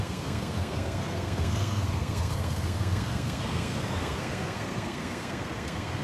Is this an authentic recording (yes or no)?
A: no